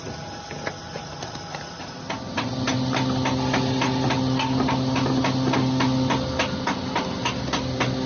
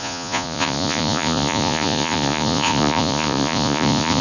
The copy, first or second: second